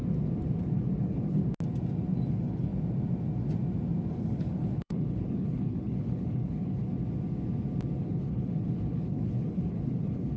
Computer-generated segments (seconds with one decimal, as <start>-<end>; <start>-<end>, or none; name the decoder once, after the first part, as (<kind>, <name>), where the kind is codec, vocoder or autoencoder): 1.0-1.4 (codec, HILCodec); 2.3-2.7; 4.1-6.9; 8.0-10.4